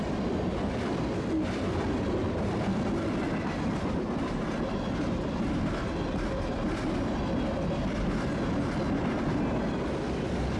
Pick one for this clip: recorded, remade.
recorded